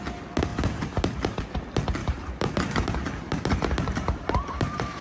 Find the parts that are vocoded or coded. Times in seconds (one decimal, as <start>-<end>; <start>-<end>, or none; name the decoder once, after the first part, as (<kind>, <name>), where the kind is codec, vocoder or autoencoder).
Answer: 0.5-1.4 (vocoder, BigVGAN v2); 2.0-5.0